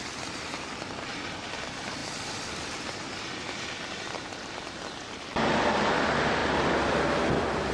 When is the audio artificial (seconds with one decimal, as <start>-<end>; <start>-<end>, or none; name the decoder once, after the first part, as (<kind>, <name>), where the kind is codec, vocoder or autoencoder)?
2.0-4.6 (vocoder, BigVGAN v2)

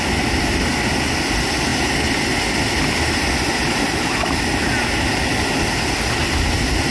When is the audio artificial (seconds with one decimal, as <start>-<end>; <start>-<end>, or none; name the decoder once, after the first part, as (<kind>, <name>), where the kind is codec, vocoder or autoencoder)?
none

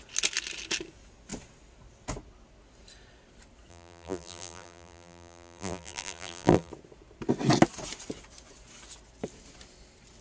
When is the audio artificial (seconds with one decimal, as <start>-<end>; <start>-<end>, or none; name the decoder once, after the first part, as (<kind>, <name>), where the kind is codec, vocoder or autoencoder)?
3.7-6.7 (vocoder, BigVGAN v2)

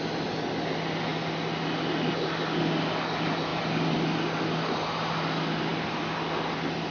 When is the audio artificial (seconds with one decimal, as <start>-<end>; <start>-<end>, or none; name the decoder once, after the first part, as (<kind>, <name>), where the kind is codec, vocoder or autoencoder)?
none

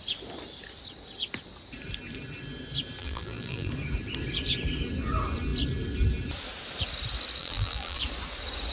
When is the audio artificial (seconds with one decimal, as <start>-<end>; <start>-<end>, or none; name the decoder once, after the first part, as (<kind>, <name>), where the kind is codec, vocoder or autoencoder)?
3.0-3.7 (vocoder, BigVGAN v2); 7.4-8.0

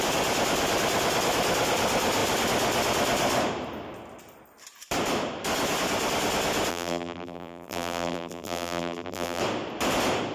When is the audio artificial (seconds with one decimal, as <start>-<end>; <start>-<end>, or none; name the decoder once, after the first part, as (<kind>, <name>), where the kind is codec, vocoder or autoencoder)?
6.7-9.4 (vocoder, BigVGAN v2)